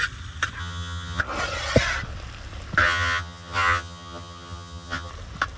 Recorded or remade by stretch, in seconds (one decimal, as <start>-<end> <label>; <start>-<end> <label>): 0.0-0.6 recorded; 0.6-1.2 remade; 1.2-2.8 recorded; 2.8-5.1 remade; 5.1-5.6 recorded